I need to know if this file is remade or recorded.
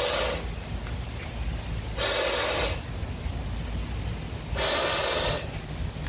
recorded